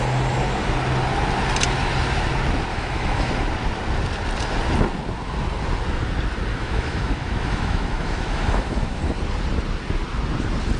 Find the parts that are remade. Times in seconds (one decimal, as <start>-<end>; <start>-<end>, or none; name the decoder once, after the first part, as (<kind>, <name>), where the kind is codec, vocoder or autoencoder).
2.7-3.3 (autoencoder, DAC-VAE); 6.5-9.0